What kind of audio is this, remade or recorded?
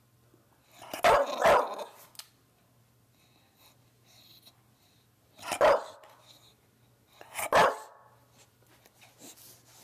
recorded